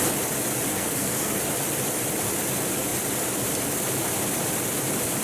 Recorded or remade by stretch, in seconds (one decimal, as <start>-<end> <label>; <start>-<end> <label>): 0.0-0.7 recorded; 0.7-1.4 remade; 1.4-5.2 recorded